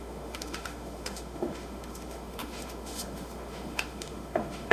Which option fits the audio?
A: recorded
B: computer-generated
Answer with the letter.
B